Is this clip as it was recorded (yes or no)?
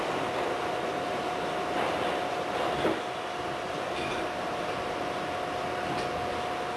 yes